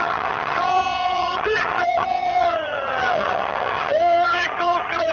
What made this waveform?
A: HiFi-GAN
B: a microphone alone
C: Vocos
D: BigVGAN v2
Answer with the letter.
A